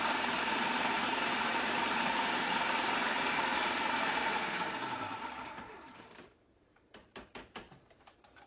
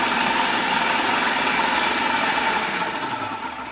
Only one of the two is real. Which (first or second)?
second